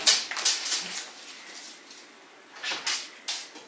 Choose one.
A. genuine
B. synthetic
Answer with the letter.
A